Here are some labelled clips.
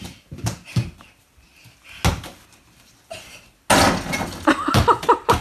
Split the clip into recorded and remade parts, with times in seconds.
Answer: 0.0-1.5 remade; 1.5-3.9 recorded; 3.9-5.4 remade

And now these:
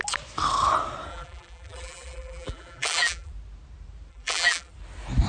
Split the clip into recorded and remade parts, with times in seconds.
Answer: 0.0-1.1 recorded; 1.1-3.3 remade; 3.3-4.1 recorded; 4.1-4.7 remade; 4.7-5.3 recorded

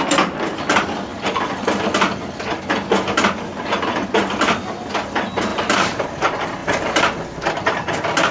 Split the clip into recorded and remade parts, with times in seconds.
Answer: 0.0-5.5 recorded; 5.5-6.1 remade; 6.1-6.6 recorded; 6.6-7.2 remade; 7.2-8.3 recorded

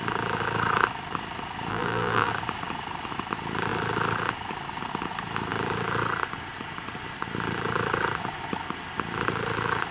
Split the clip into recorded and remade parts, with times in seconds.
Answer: 0.0-1.7 recorded; 1.7-2.3 remade; 2.3-9.9 recorded

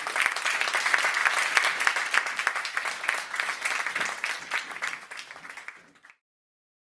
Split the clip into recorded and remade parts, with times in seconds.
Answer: 0.0-6.9 recorded

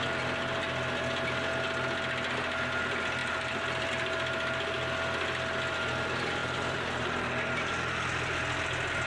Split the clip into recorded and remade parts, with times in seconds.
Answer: 0.0-3.2 recorded; 3.2-3.9 remade; 3.9-6.4 recorded; 6.4-7.0 remade; 7.0-9.1 recorded

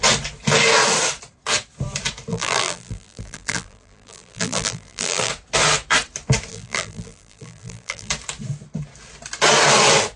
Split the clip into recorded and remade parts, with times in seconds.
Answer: 0.0-2.3 recorded; 2.3-5.3 remade; 5.3-6.5 recorded; 6.5-8.1 remade; 8.1-10.2 recorded

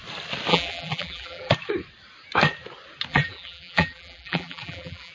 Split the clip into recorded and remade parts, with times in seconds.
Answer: 0.0-0.5 recorded; 0.5-1.5 remade; 1.5-3.1 recorded; 3.1-5.1 remade